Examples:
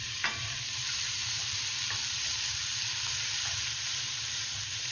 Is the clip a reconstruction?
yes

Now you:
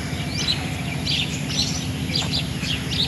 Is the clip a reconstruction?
no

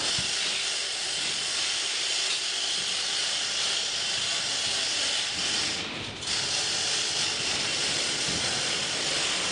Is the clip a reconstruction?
no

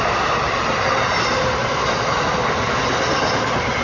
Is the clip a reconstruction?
no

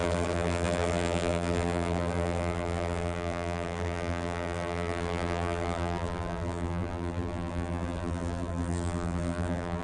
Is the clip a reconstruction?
yes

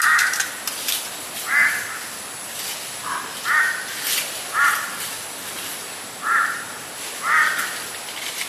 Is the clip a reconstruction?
no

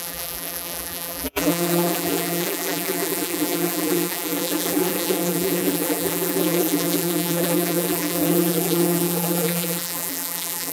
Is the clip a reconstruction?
yes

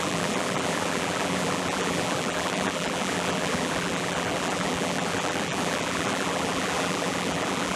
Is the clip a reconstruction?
yes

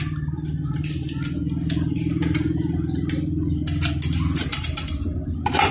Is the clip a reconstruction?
no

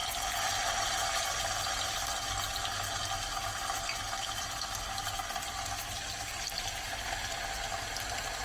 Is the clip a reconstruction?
no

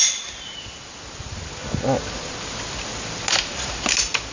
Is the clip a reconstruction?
no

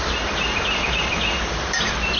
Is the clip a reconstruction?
no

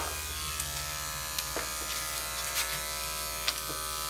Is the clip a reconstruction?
no